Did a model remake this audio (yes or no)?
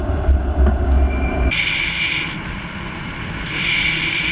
no